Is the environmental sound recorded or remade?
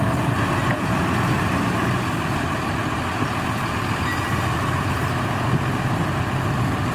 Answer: recorded